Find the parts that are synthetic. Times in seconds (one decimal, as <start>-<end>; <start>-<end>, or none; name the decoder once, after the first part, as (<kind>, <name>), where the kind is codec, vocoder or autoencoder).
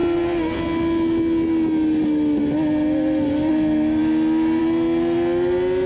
none